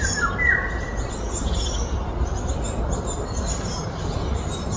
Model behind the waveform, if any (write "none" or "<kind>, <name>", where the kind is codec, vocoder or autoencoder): none